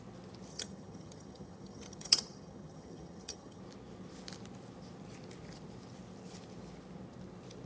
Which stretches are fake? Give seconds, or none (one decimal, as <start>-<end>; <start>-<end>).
0.5-3.6